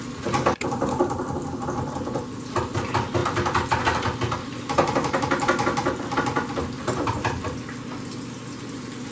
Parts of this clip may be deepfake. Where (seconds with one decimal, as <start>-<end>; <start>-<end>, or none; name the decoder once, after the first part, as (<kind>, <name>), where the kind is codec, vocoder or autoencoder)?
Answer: none